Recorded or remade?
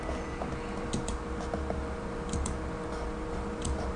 recorded